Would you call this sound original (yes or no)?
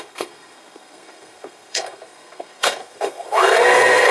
no